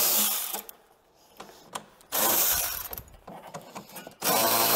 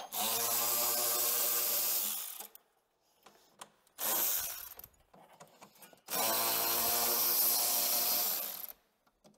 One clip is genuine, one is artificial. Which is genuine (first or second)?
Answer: second